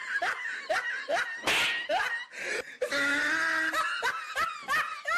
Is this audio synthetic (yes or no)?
no